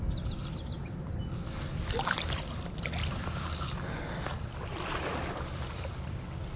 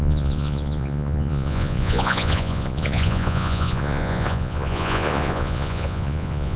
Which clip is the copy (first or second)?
second